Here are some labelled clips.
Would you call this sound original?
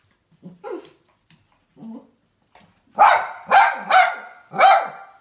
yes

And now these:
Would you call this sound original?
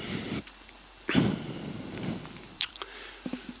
yes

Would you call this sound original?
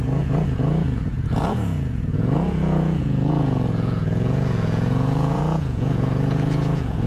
no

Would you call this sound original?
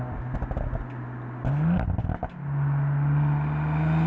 yes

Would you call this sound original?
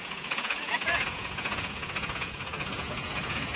no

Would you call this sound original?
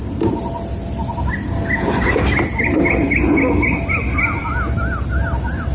yes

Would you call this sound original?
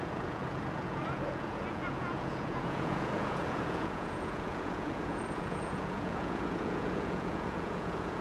no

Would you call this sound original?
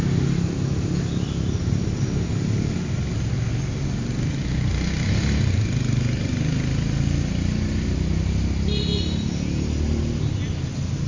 yes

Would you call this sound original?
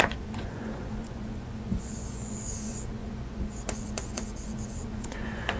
no